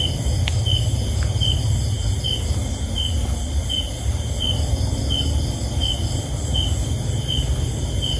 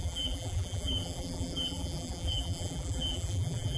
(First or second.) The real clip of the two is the first